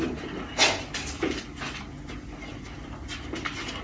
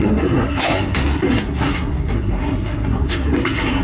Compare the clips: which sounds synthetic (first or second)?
second